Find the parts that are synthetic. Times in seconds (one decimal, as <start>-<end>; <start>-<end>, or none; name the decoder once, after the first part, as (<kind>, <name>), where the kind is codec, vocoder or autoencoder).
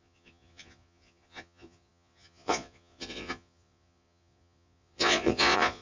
0.0-5.8 (vocoder, Vocos)